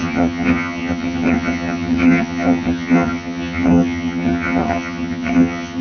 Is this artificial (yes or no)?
yes